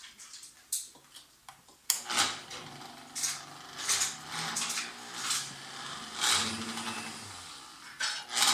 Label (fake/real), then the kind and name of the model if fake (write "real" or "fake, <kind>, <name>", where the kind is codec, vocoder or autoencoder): real